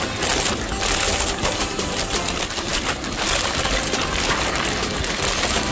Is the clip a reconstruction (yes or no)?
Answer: no